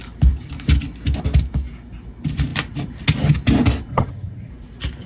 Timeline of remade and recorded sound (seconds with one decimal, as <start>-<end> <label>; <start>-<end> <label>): 0.0-3.9 recorded; 3.9-4.5 remade; 4.5-5.1 recorded